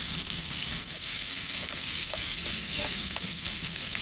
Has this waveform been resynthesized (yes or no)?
yes